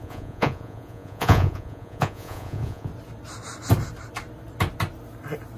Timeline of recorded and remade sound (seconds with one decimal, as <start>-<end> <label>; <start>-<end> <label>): 0.0-2.9 remade; 2.9-5.6 recorded